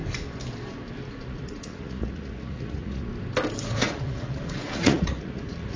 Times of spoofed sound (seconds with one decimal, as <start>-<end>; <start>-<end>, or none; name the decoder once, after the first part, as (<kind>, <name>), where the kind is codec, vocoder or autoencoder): 1.1-3.1 (vocoder, Vocos); 3.7-5.8